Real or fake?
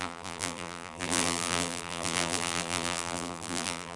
fake